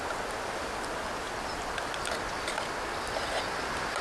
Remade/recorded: recorded